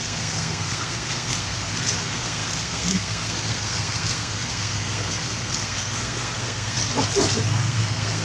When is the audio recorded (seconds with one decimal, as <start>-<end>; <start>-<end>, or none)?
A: 6.8-7.3